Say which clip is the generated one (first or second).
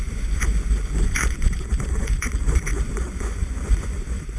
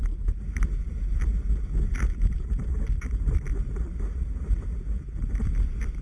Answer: first